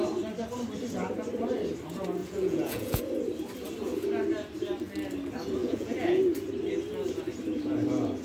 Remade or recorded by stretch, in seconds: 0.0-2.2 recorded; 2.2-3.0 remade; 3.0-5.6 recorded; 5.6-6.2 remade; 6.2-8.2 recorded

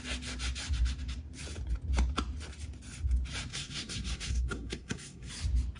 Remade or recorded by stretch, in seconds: 0.0-3.5 recorded; 3.5-5.3 remade; 5.3-5.8 recorded

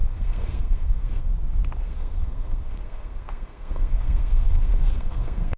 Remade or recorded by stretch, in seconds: 0.0-1.3 remade; 1.3-1.8 recorded; 1.8-5.6 remade

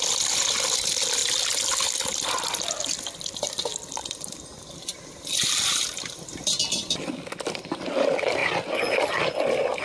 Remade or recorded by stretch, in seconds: 0.0-1.2 remade; 1.2-2.8 recorded; 2.8-8.4 remade; 8.4-9.8 recorded

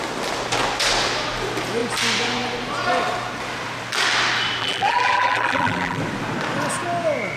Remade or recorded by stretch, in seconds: 0.0-4.6 recorded; 4.6-6.0 remade; 6.0-7.4 recorded